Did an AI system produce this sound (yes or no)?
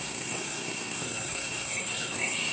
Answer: yes